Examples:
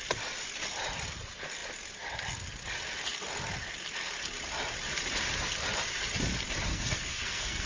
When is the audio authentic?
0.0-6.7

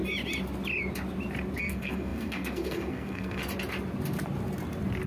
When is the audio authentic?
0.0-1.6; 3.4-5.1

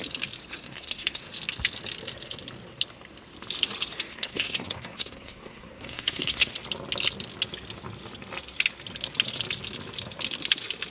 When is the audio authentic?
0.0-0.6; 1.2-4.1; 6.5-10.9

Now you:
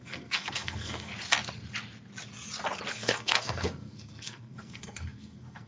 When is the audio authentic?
1.1-2.9

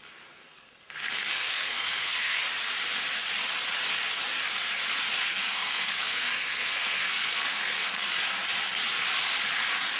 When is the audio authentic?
0.0-0.4; 2.4-5.2; 8.0-10.0

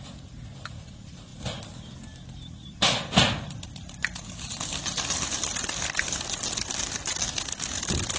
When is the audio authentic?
0.0-8.2

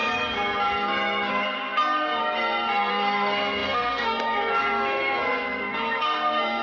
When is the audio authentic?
0.0-1.3; 2.2-2.9

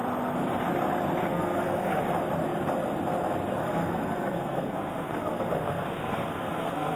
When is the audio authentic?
0.0-1.3; 2.0-3.6